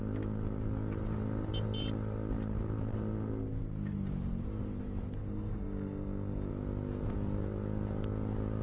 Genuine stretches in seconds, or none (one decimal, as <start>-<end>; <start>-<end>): 0.0-5.2; 6.5-8.6